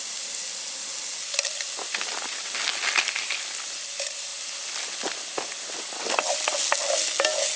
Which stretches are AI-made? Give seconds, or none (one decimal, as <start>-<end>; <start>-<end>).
none